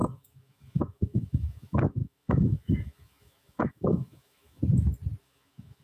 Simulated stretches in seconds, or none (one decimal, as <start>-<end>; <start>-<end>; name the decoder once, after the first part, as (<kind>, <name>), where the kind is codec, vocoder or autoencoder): 0.0-4.6 (autoencoder, DAC-VAE); 5.2-5.8

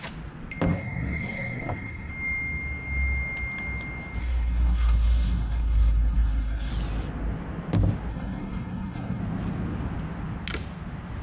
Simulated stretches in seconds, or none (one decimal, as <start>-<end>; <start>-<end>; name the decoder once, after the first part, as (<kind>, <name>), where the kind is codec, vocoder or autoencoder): 0.7-2.1 (codec, SNAC); 4.2-6.7; 8.1-9.2